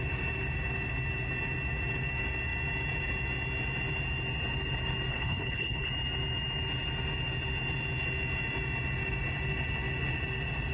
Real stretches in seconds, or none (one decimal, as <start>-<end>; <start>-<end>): 0.0-5.1; 5.9-10.7